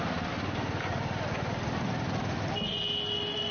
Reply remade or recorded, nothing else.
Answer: recorded